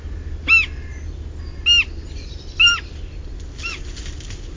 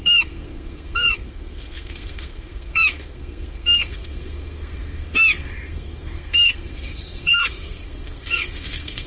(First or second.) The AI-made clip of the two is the second